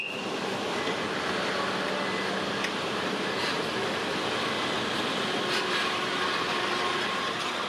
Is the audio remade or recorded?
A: recorded